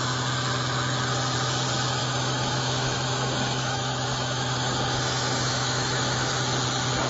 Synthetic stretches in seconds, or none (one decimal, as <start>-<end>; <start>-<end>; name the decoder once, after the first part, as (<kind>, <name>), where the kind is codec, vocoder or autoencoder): 2.0-6.3 (autoencoder, DAC-VAE)